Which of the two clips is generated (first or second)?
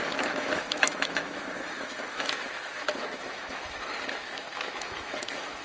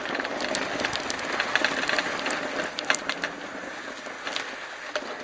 first